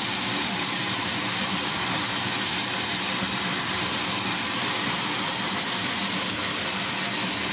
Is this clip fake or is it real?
real